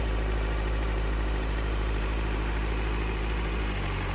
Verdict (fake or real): fake